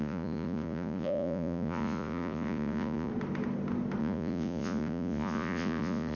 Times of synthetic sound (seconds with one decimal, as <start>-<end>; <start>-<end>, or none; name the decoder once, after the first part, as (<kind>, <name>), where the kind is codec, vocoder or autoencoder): 0.0-3.1 (vocoder, Vocos); 4.0-6.1